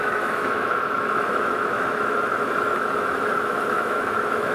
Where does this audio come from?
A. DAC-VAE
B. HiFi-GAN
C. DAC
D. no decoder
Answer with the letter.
A